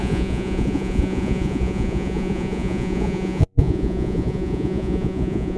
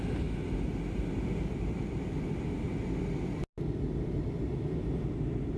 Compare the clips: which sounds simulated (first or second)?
first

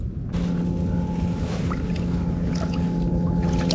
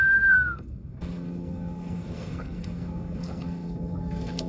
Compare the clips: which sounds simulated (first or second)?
second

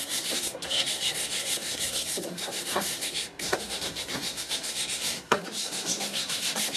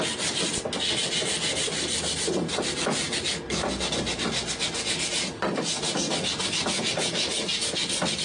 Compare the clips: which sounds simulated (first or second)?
first